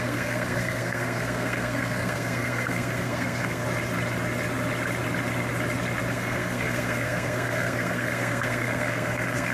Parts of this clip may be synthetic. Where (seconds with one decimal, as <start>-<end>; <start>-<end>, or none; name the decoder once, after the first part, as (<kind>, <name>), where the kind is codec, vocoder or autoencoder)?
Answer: 0.0-3.6 (codec, SNAC); 6.1-9.5